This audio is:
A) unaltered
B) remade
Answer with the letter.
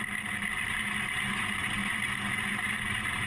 A